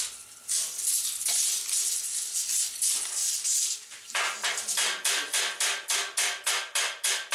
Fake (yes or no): yes